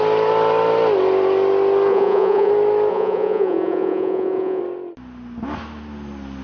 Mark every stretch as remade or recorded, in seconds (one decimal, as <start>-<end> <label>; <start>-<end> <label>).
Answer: 0.0-1.9 recorded; 1.9-2.5 remade; 2.5-2.9 recorded; 2.9-4.6 remade; 4.6-6.4 recorded